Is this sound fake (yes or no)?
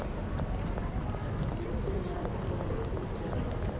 no